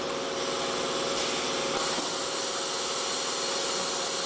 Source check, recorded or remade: recorded